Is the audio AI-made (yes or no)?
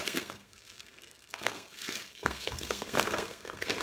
yes